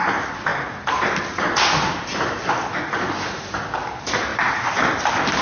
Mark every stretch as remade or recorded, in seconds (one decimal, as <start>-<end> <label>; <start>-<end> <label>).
0.0-5.4 recorded